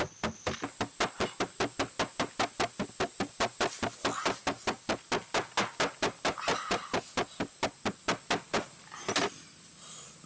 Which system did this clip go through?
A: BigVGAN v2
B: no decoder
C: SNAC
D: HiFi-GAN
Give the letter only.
B